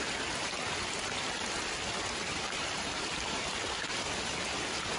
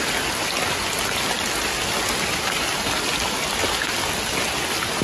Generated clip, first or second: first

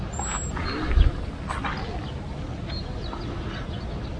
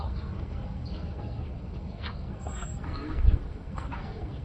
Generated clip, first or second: second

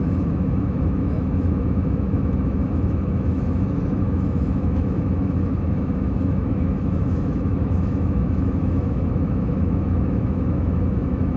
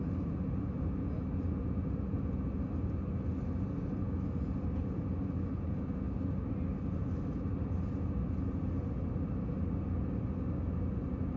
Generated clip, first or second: first